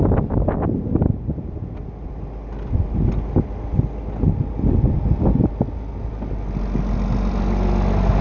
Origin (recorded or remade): recorded